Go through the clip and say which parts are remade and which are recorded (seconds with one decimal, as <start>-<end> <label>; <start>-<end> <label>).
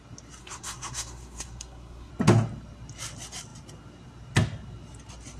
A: 0.0-0.4 recorded; 0.4-2.1 remade; 2.1-5.4 recorded